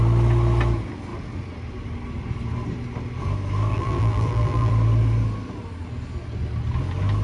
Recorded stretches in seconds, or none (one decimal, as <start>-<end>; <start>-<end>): 0.0-3.7; 4.7-7.2